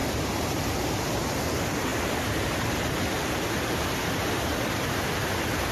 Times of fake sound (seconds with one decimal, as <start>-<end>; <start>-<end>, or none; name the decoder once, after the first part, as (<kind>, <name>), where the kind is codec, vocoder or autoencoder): 0.0-0.9 (vocoder, BigVGAN v2); 1.9-5.3